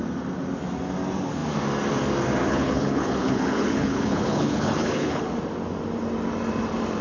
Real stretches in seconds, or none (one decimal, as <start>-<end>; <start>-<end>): 0.0-2.4; 5.3-7.0